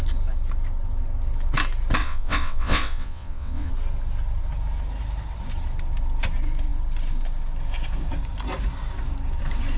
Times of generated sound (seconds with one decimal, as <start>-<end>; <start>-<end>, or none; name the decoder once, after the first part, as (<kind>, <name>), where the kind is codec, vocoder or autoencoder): 2.0-3.7 (vocoder, WaveNeXt)